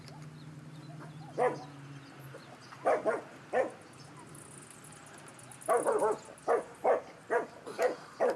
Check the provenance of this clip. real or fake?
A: real